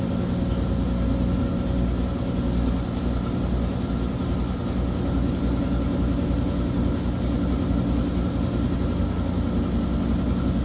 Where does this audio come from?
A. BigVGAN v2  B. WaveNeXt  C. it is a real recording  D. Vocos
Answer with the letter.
C